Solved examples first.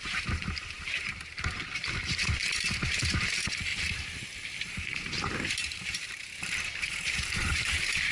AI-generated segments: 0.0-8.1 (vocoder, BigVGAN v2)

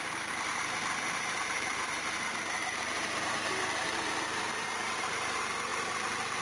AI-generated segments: 0.0-5.7 (vocoder, BigVGAN v2)

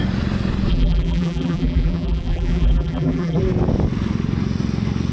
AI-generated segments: 0.7-3.4 (vocoder, BigVGAN v2)

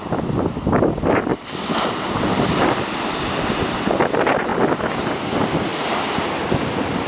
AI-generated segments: 1.3-2.7 (vocoder, BigVGAN v2); 5.7-6.3

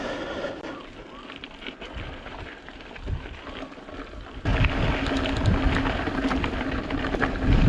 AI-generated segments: 0.0-4.5 (vocoder, BigVGAN v2); 5.5-7.7

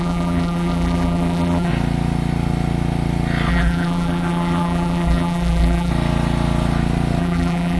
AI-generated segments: 0.0-1.7 (vocoder, BigVGAN v2); 3.5-5.9; 7.2-7.8

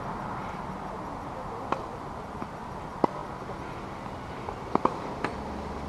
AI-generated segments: none

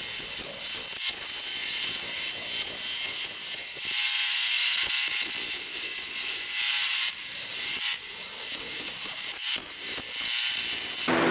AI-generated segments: 1.6-2.3 (vocoder, BigVGAN v2); 6.7-10.0